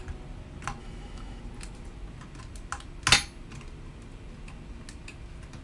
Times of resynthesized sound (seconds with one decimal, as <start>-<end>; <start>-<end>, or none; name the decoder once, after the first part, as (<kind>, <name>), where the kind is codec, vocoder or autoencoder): 0.8-1.4 (autoencoder, DAC-VAE)